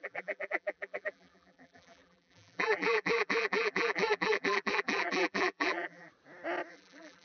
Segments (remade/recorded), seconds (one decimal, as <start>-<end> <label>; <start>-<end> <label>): 0.0-6.1 remade; 6.1-6.7 recorded; 6.7-7.2 remade